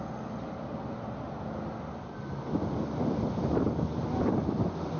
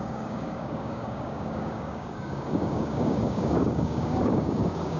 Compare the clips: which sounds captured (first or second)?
first